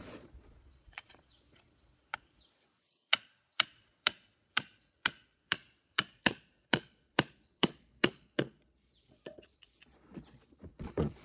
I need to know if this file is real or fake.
fake